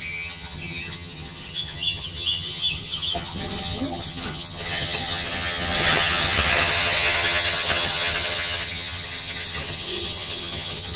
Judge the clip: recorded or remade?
remade